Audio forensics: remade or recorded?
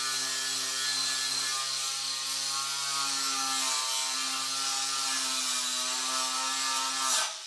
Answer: recorded